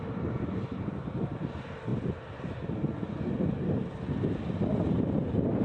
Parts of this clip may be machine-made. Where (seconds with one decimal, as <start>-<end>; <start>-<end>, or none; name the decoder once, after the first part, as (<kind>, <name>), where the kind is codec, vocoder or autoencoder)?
0.0-1.9 (vocoder, BigVGAN v2)